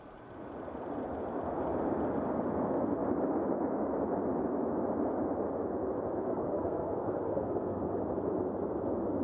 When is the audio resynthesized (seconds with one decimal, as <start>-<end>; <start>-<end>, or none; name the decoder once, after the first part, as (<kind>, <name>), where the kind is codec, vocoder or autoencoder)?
6.3-8.0 (codec, SNAC)